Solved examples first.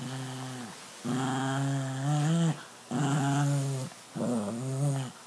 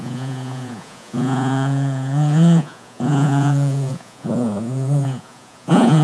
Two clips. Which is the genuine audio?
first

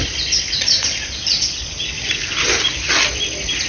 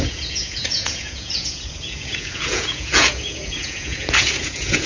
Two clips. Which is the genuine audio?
first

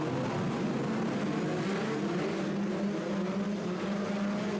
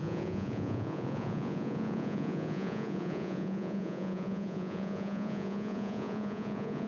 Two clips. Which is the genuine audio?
first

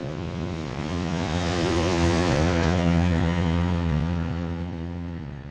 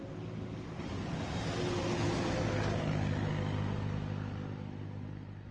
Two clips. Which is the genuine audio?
second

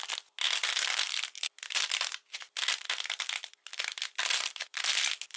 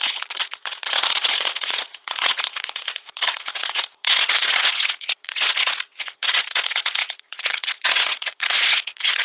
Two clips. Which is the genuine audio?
first